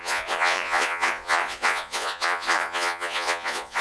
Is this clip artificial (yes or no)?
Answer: yes